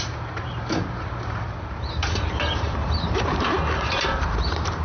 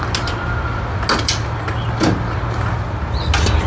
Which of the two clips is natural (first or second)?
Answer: second